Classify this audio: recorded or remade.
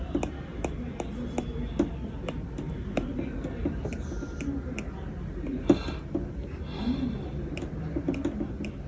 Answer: recorded